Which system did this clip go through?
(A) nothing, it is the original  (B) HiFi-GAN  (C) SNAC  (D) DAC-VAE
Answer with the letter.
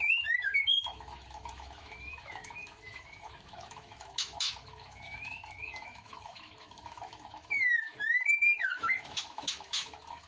D